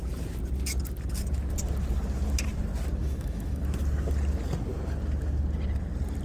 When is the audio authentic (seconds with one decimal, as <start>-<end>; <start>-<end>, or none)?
0.0-3.0; 3.6-6.2